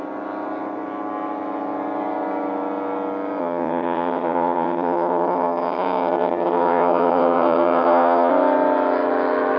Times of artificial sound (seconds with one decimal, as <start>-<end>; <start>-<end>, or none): 3.4-8.3